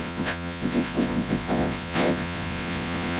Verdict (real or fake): fake